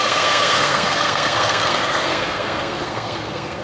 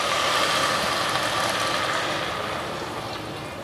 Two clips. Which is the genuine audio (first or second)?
second